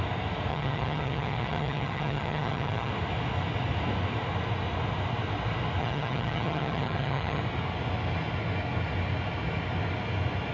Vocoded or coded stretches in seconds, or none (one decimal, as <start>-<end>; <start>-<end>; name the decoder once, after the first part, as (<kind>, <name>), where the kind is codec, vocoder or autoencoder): 0.5-2.9 (vocoder, HiFi-GAN); 5.8-7.4